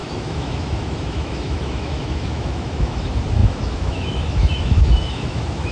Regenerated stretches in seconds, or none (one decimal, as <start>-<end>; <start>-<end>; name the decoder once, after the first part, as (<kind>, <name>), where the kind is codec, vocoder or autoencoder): 0.0-5.7 (autoencoder, DAC-VAE)